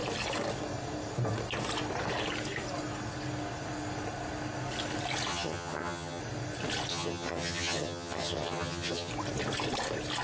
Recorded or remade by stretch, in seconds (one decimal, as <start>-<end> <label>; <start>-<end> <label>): 0.0-5.3 recorded; 5.3-6.2 remade; 6.2-6.9 recorded; 6.9-9.1 remade; 9.1-10.2 recorded